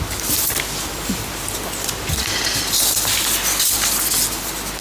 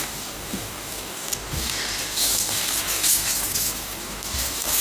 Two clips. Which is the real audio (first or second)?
first